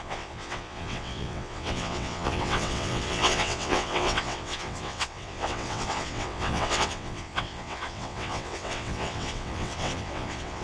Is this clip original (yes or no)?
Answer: no